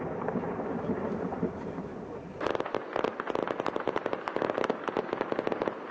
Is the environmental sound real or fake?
real